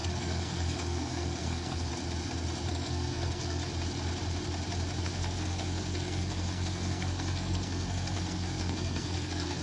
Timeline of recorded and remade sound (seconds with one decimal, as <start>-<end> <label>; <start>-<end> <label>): 0.0-1.9 remade; 1.9-2.7 recorded; 2.7-3.6 remade; 3.6-5.0 recorded; 5.0-9.6 remade